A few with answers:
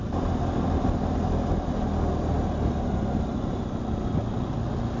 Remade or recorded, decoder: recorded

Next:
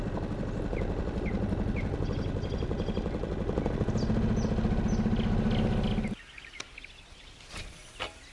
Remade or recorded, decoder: recorded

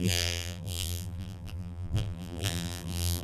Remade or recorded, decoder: remade, vocoder, BigVGAN v2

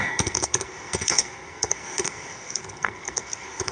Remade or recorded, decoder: remade, codec, SNAC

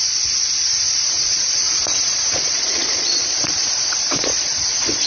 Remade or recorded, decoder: remade, vocoder, Vocos